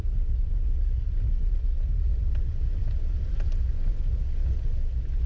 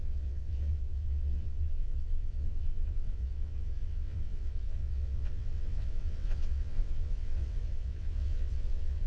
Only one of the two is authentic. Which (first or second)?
first